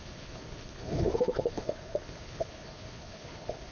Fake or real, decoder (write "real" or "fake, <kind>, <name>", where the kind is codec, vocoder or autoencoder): fake, codec, HILCodec